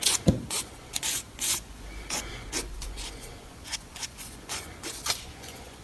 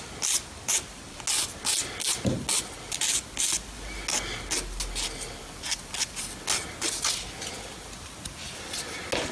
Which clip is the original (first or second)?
second